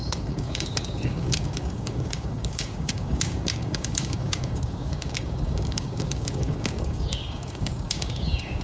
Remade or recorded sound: remade